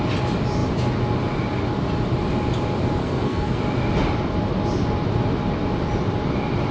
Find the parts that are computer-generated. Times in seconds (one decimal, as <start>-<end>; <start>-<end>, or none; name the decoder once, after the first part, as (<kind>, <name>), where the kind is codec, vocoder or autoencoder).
3.0-3.6 (codec, SNAC)

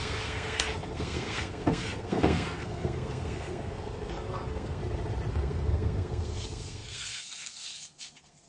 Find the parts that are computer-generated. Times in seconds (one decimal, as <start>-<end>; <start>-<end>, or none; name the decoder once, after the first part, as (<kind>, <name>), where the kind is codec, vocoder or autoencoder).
0.0-4.8 (codec, SNAC); 5.3-8.5

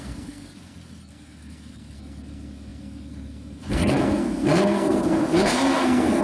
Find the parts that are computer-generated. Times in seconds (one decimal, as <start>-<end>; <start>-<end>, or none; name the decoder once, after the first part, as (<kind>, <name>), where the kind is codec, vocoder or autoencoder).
0.0-6.2 (codec, SNAC)

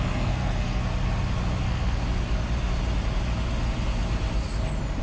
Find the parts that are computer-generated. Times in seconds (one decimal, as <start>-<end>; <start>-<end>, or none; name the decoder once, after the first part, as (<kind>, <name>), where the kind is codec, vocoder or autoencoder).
0.0-0.8 (codec, SNAC); 1.6-2.0

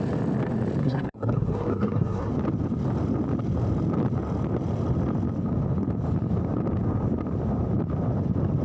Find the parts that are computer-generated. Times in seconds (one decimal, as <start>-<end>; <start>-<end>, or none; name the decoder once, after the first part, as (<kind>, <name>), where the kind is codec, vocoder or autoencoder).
0.8-2.3 (codec, SNAC)